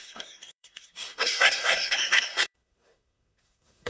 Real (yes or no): no